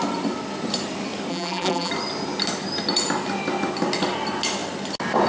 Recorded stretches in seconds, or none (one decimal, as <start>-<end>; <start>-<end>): 0.0-1.3; 1.9-5.3